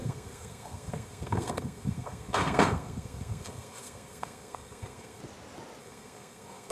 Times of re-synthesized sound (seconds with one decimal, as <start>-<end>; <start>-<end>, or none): 0.0-5.2; 5.8-6.7